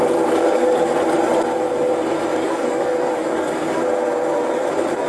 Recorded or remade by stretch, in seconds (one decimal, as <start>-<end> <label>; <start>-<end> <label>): 0.0-0.4 recorded; 0.4-0.9 remade; 0.9-2.3 recorded; 2.3-3.8 remade; 3.8-5.1 recorded